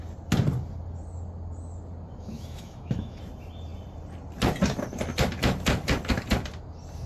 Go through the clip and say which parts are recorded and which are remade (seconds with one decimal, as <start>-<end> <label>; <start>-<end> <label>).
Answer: 0.0-2.2 recorded; 2.2-3.2 remade; 3.2-7.1 recorded

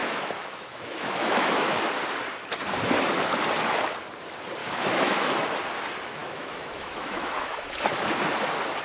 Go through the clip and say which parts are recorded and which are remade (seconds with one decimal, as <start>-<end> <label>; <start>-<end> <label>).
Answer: 0.0-1.9 remade; 1.9-4.6 recorded; 4.6-5.3 remade; 5.3-6.2 recorded; 6.2-7.9 remade; 7.9-8.8 recorded